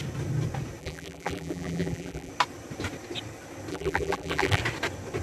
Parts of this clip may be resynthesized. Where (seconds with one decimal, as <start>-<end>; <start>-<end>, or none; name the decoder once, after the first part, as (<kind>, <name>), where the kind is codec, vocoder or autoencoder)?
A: 0.8-2.3 (vocoder, BigVGAN v2); 3.7-4.6